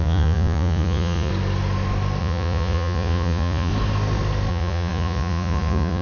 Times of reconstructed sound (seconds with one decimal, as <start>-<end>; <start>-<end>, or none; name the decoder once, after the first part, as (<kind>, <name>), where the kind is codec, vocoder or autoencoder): 0.0-1.3 (vocoder, Vocos); 2.2-3.7; 4.5-6.0